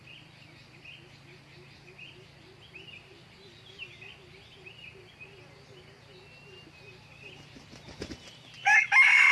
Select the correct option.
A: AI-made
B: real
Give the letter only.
B